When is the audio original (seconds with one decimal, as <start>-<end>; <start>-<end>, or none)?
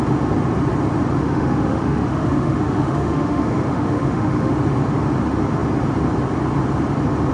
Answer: 0.0-1.2; 4.5-7.3